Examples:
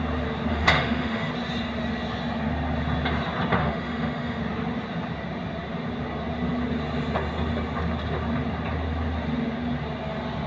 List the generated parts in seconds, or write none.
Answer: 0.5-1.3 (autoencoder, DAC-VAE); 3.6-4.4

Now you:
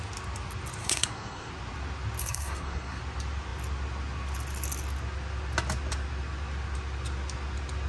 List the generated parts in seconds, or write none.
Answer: 0.8-1.5 (codec, SNAC); 2.2-3.0

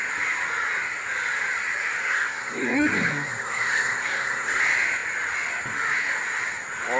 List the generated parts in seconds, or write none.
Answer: 2.0-4.6 (codec, SNAC)